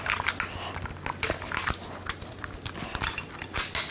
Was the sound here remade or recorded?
recorded